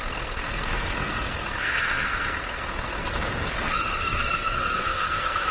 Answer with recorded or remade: remade